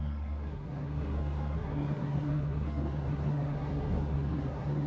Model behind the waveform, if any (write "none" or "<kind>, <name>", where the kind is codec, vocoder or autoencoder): codec, SNAC